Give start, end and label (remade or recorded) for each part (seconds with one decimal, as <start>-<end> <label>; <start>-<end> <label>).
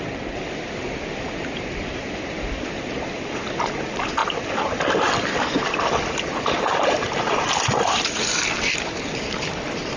0.0-10.0 recorded